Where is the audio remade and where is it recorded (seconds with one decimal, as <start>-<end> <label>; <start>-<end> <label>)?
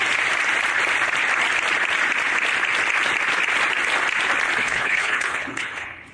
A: 0.0-4.6 recorded; 4.6-6.1 remade